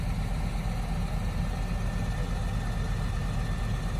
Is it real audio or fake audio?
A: real